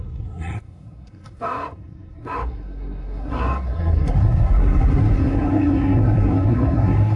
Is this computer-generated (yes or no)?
yes